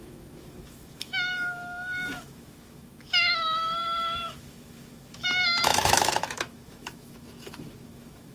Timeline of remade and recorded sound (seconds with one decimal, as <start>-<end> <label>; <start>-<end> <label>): 0.0-8.3 remade